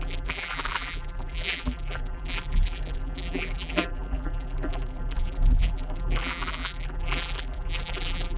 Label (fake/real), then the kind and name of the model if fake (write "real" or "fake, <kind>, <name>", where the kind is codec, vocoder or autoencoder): fake, vocoder, BigVGAN v2